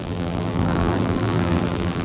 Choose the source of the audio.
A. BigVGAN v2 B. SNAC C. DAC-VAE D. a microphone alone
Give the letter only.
A